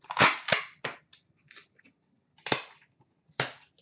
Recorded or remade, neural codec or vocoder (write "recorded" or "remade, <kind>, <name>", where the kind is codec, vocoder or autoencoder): recorded